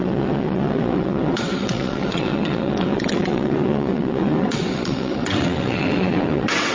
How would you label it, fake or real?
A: fake